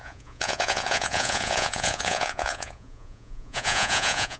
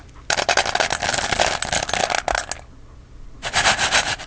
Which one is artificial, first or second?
first